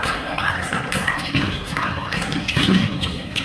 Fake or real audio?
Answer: fake